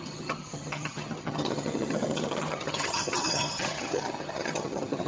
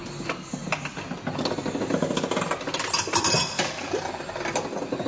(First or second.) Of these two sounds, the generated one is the first